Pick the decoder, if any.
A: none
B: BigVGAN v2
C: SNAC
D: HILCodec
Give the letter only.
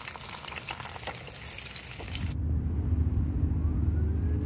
A